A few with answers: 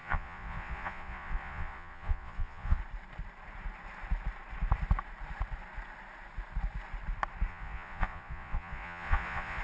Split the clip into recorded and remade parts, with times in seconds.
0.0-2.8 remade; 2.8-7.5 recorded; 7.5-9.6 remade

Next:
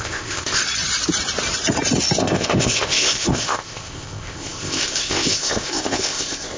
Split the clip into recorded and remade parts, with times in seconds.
0.0-0.6 remade; 0.6-2.2 recorded; 2.2-6.6 remade

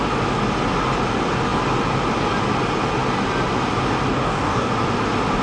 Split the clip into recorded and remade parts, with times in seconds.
0.0-4.1 recorded; 4.1-4.7 remade; 4.7-5.4 recorded

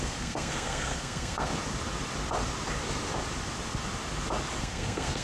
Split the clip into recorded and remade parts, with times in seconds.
0.0-1.5 remade; 1.5-4.6 recorded; 4.6-5.2 remade

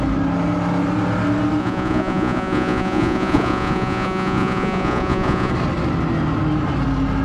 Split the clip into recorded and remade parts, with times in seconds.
0.0-1.6 recorded; 1.6-5.5 remade; 5.5-7.2 recorded

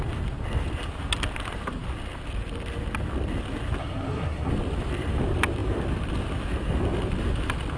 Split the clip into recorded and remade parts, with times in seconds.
0.0-3.8 recorded; 3.8-4.5 remade; 4.5-7.8 recorded

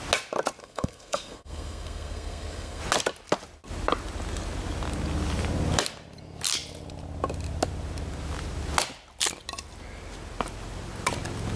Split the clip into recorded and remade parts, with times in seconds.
0.0-0.6 recorded; 0.6-2.8 remade; 2.8-11.6 recorded

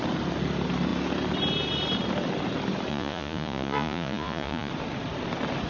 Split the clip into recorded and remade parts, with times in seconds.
0.0-2.9 recorded; 2.9-4.7 remade; 4.7-5.7 recorded